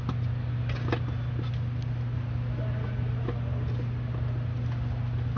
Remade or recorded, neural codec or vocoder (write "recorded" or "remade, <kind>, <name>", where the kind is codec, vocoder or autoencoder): recorded